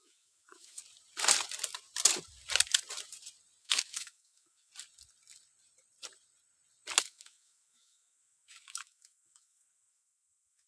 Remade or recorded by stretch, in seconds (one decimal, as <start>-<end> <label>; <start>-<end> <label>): 0.0-0.8 remade; 0.8-3.6 recorded; 3.6-4.7 remade; 4.7-7.0 recorded; 7.0-10.7 remade